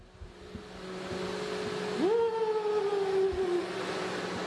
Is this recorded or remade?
recorded